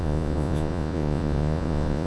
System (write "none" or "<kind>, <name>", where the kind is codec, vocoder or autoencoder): vocoder, Vocos